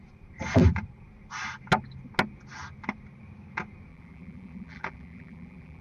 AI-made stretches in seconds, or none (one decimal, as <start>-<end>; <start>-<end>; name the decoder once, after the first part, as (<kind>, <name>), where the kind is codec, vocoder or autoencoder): 3.9-5.8 (vocoder, BigVGAN v2)